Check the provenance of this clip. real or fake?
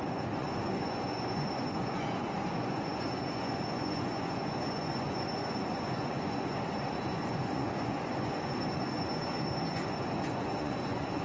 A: fake